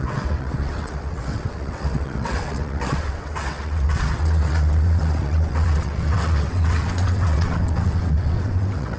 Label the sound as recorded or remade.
remade